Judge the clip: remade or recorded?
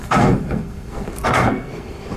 remade